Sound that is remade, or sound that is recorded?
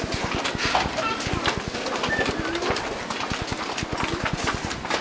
recorded